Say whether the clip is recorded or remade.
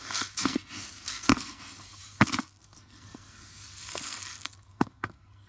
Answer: remade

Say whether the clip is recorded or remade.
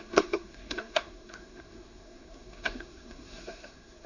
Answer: remade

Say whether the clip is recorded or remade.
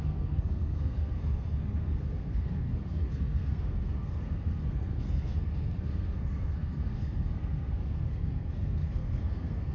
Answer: remade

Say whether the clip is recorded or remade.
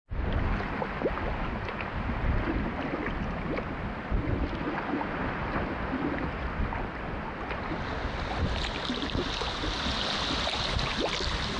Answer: recorded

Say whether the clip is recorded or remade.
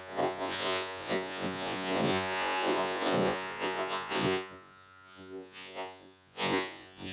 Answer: remade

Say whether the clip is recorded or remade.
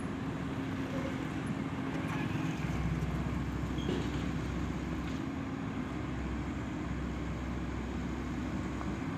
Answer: recorded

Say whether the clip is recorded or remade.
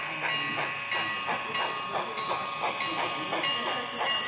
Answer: recorded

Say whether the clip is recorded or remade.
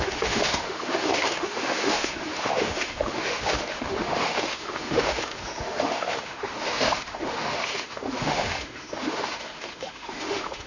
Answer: remade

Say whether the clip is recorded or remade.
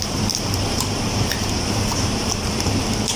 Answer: remade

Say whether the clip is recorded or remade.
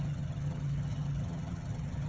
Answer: remade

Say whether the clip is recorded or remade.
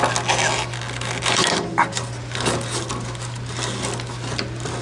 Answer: recorded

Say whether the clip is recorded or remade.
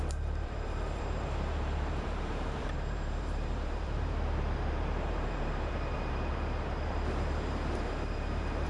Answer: remade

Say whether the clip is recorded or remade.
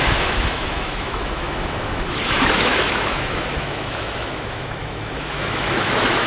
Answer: remade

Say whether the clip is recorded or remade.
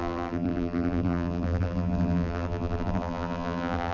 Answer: remade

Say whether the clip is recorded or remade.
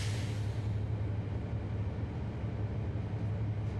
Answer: recorded